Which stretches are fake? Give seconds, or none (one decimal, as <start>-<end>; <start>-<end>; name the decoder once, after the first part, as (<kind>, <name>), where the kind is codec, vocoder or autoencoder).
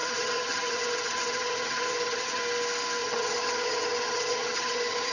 0.0-2.4 (vocoder, HiFi-GAN); 3.0-5.1